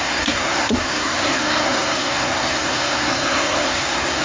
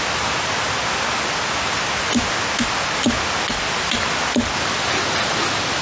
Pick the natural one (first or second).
second